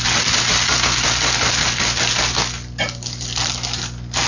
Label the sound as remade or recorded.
recorded